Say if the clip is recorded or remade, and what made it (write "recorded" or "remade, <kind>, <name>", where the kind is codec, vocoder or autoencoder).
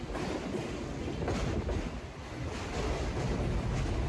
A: recorded